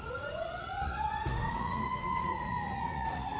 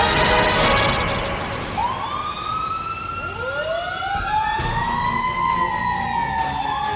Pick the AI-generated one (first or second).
first